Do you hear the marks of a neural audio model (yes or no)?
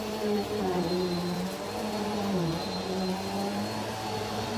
yes